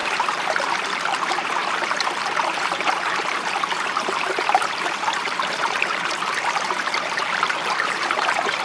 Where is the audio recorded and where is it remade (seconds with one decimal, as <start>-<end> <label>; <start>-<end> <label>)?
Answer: 0.0-8.6 remade